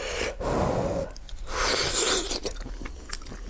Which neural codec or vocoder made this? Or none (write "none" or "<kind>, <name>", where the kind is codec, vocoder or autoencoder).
none